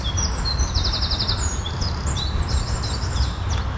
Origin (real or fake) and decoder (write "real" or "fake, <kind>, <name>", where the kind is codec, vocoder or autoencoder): real